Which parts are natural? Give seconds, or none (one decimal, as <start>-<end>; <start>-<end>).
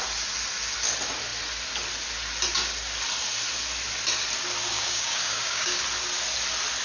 0.0-4.7; 5.8-6.8